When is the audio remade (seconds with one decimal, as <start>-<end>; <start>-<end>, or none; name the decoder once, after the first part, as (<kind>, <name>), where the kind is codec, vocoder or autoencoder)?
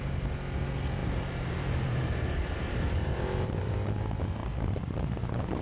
1.0-3.7 (vocoder, BigVGAN v2); 4.4-5.6